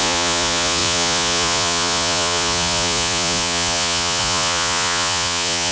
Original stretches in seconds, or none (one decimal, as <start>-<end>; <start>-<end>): none